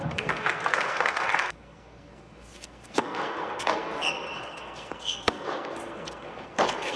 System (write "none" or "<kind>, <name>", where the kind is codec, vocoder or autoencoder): codec, SNAC